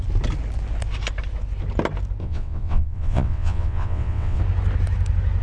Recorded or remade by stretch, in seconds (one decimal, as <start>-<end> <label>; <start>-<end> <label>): 0.0-2.2 recorded; 2.2-4.4 remade; 4.4-5.4 recorded